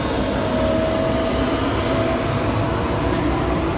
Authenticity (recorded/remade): recorded